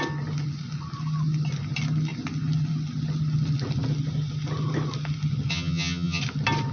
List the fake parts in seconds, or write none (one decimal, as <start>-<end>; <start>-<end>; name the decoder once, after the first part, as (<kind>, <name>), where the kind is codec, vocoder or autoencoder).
5.5-6.2 (vocoder, HiFi-GAN)